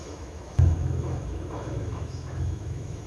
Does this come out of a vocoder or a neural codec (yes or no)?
yes